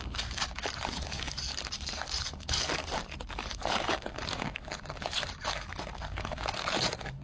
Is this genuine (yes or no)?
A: no